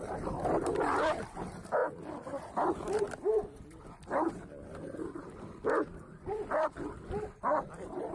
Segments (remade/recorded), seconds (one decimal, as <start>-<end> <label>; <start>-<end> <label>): 0.0-1.8 remade; 1.8-2.5 recorded; 2.5-8.1 remade